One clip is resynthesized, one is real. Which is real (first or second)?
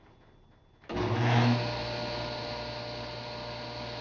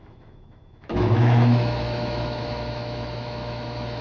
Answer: first